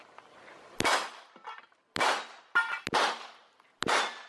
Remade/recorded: recorded